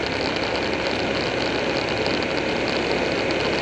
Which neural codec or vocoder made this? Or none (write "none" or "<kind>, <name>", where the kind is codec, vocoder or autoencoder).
none